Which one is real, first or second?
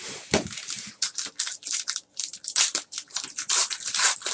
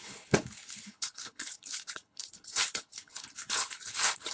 first